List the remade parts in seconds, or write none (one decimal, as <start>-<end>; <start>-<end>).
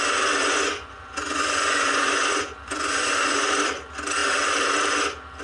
0.4-3.4